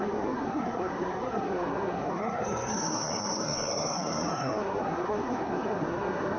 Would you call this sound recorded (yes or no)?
no